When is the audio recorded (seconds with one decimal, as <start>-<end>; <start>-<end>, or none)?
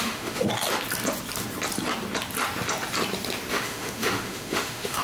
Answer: 0.5-3.5